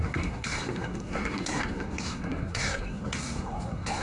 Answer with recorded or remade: remade